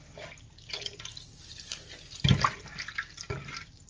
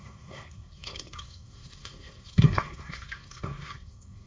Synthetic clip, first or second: second